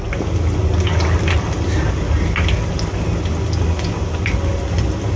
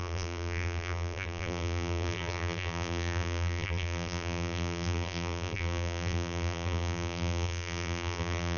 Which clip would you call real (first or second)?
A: first